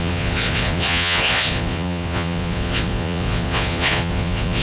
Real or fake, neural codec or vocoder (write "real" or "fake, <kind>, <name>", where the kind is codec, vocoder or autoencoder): fake, vocoder, Vocos